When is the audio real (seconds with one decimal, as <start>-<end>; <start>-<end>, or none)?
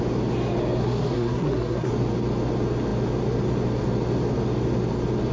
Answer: 0.0-0.8; 1.9-5.3